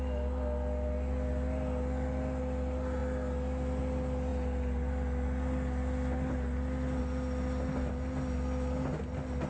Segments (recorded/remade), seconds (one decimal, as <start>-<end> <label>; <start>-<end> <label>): 0.0-9.5 recorded